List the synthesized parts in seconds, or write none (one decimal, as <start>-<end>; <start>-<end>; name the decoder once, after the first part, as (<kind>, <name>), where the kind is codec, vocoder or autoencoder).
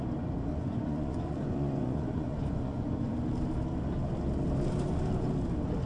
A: 0.5-3.1 (vocoder, Vocos)